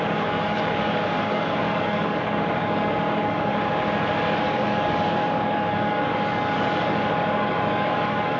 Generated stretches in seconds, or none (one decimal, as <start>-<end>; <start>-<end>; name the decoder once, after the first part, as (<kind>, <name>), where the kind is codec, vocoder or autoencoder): 0.0-3.5 (codec, DAC); 4.4-8.4